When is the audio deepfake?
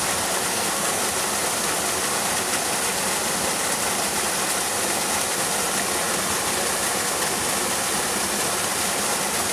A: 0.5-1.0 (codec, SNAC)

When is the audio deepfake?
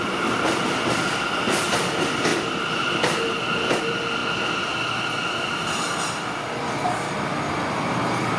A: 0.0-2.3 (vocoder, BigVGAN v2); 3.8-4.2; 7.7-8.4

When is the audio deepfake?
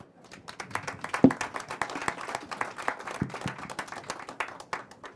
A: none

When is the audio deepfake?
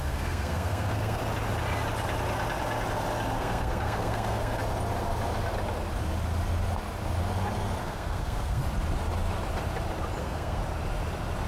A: 0.0-1.2 (codec, SNAC); 3.4-4.6; 7.8-8.6; 10.2-10.6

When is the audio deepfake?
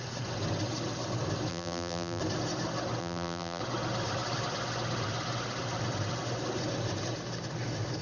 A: 1.5-2.2 (vocoder, BigVGAN v2); 3.0-3.6